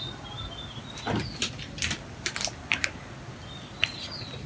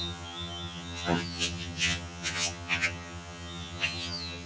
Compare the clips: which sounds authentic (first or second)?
first